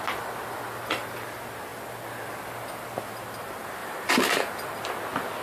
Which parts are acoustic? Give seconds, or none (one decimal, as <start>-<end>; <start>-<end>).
0.0-3.8; 4.9-5.4